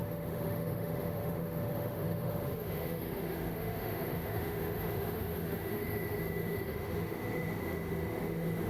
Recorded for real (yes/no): no